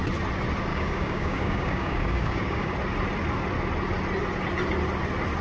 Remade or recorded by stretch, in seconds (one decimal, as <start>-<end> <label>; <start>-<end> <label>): 0.0-0.7 recorded; 0.7-2.7 remade; 2.7-5.4 recorded

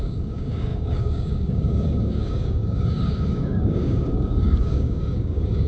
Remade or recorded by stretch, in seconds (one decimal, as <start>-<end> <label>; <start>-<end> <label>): 0.0-5.7 remade

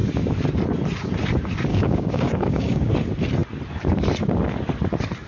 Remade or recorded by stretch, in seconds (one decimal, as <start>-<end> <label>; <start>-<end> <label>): 0.0-1.7 recorded; 1.7-2.9 remade; 2.9-5.3 recorded

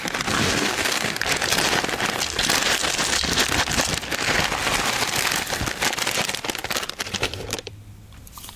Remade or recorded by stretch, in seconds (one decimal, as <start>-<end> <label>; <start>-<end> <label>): 0.0-0.4 recorded; 0.4-1.2 remade; 1.2-8.6 recorded

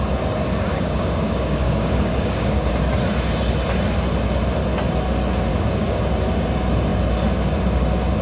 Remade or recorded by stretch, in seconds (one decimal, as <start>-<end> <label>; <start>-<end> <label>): 0.0-0.7 recorded; 0.7-2.7 remade; 2.7-5.5 recorded; 5.5-6.1 remade; 6.1-8.2 recorded

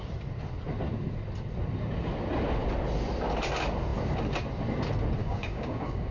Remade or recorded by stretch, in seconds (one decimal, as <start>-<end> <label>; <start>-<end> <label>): 0.0-5.2 recorded; 5.2-6.1 remade

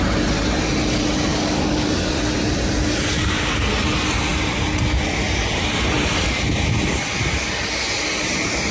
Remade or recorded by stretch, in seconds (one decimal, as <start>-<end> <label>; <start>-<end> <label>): 0.0-1.3 recorded; 1.3-2.1 remade; 2.1-3.1 recorded; 3.1-3.7 remade; 3.7-8.7 recorded